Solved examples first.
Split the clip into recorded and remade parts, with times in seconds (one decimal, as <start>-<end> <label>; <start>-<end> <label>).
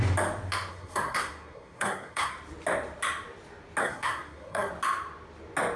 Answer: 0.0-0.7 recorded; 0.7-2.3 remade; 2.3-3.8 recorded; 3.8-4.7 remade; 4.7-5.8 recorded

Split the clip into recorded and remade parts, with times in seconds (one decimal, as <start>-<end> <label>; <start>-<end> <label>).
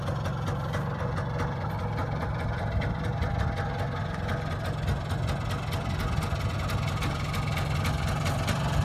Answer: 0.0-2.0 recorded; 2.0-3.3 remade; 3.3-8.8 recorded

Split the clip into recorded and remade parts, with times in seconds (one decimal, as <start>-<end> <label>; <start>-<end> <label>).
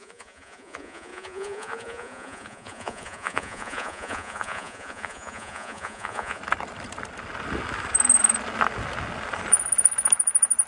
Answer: 0.0-6.4 remade; 6.4-10.7 recorded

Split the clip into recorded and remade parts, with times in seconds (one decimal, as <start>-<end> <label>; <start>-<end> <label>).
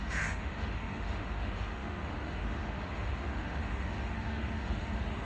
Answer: 0.0-5.2 remade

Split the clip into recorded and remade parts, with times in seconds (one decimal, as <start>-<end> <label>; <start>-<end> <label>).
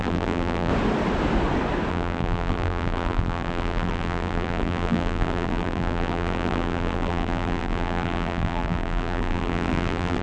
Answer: 0.0-0.7 remade; 0.7-1.9 recorded; 1.9-10.2 remade